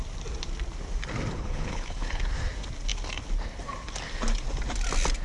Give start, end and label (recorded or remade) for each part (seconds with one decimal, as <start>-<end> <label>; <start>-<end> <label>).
0.0-1.3 recorded; 1.3-2.2 remade; 2.2-5.2 recorded